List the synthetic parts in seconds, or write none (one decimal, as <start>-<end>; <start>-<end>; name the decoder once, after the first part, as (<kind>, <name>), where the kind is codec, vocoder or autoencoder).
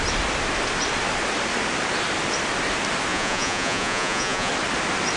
3.1-4.5 (vocoder, Vocos)